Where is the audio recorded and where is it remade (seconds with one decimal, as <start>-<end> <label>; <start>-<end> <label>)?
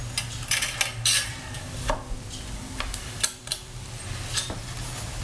0.0-1.3 recorded; 1.3-4.0 remade; 4.0-5.2 recorded